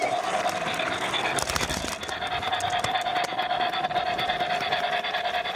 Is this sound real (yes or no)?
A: yes